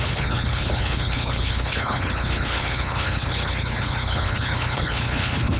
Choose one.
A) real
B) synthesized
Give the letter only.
B